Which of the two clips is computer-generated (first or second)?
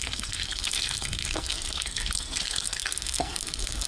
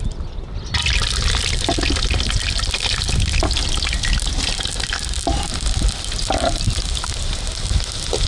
first